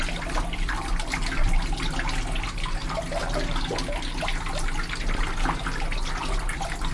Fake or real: real